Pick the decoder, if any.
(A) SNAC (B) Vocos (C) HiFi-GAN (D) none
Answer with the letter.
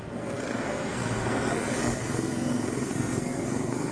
A